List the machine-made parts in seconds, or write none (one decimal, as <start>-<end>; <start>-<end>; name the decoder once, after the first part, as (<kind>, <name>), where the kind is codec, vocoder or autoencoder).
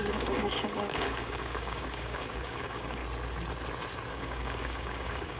0.0-3.0 (codec, DAC); 4.1-5.4